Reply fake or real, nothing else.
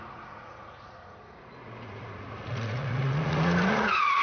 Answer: fake